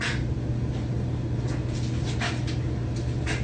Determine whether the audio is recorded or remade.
recorded